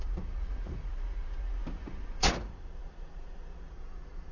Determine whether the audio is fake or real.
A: fake